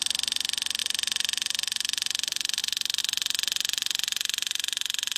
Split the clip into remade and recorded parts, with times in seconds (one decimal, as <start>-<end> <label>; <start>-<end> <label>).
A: 0.0-0.8 recorded; 0.8-2.6 remade; 2.6-3.0 recorded; 3.0-5.2 remade